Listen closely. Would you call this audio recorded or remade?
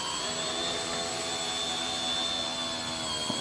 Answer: recorded